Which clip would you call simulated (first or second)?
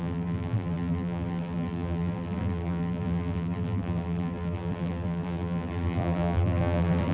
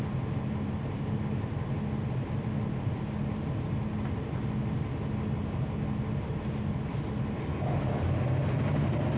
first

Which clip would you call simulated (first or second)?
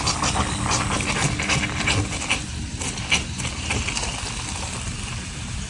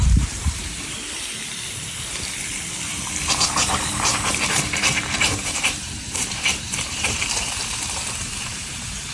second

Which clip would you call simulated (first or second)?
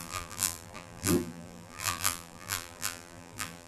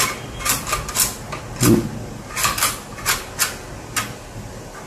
first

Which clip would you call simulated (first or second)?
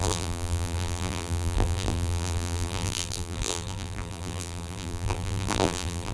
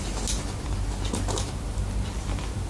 first